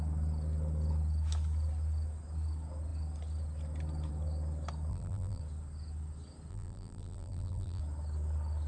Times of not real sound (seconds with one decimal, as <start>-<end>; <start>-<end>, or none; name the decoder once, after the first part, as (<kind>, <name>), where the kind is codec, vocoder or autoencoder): 4.9-5.4 (vocoder, BigVGAN v2); 6.5-7.8